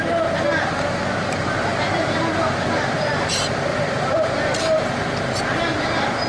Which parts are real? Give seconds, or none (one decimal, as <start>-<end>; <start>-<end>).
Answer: 0.0-1.7; 3.3-3.7; 4.8-6.3